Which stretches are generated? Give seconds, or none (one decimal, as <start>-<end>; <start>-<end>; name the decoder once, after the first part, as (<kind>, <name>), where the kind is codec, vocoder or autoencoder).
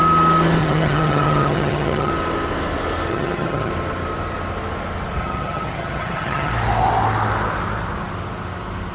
0.6-2.1 (vocoder, HiFi-GAN); 3.1-3.7; 5.2-6.5